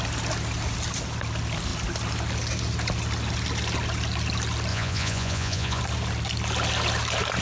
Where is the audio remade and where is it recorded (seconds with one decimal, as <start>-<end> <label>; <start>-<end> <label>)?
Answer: 0.0-4.7 recorded; 4.7-5.8 remade; 5.8-7.4 recorded